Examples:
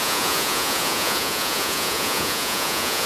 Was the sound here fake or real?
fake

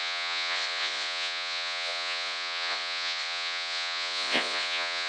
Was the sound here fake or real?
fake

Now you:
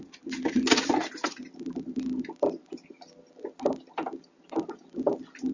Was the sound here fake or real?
real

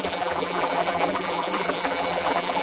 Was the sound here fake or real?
fake